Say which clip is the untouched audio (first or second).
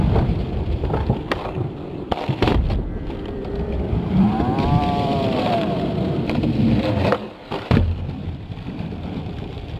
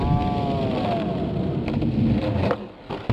second